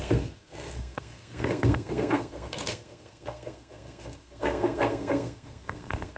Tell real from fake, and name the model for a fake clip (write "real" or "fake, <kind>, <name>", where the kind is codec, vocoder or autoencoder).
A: fake, codec, SNAC